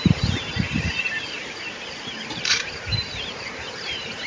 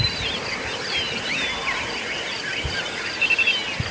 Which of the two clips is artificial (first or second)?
first